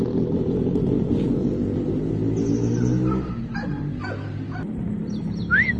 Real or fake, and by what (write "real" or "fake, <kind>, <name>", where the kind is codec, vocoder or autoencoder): real